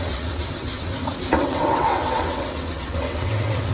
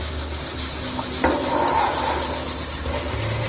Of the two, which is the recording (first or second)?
second